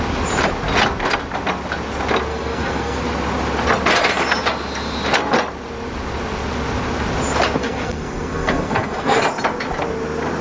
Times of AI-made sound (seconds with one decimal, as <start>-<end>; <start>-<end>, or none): 2.3-3.0; 7.6-9.2

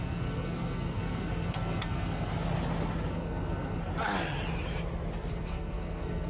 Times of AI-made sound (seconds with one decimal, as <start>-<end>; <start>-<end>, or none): 0.0-2.3; 3.1-3.9; 5.3-6.3

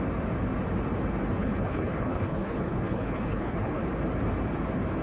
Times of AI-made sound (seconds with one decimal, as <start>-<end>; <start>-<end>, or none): 1.4-3.8

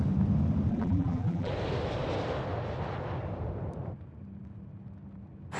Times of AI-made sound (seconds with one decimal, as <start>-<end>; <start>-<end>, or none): 0.7-1.5

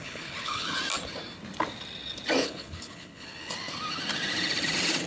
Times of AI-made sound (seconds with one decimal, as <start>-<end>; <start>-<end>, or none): 0.0-0.8; 2.4-3.5

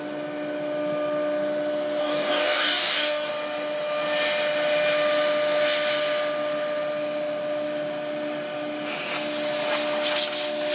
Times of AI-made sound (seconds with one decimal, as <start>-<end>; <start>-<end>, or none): 2.0-3.3